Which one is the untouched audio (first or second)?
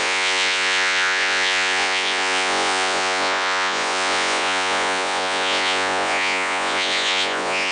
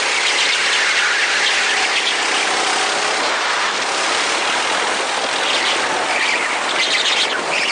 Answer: second